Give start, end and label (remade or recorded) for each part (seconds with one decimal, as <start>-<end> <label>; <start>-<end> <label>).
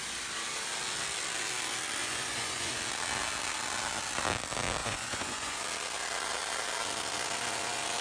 0.0-2.0 recorded; 2.0-2.8 remade; 2.8-4.8 recorded; 4.8-5.6 remade; 5.6-8.0 recorded